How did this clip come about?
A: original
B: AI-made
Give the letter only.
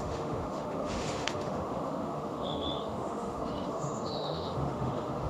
B